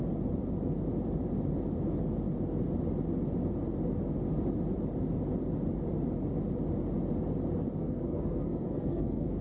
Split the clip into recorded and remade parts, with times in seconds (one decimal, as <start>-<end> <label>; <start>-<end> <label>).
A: 0.0-7.8 recorded; 7.8-9.4 remade